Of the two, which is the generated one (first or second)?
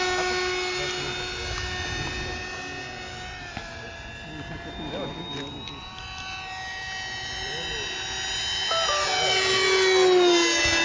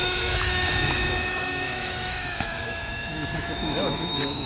second